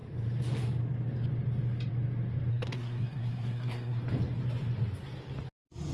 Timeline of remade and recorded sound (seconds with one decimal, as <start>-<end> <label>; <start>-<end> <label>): 0.0-2.5 recorded; 2.5-4.0 remade; 4.0-5.9 recorded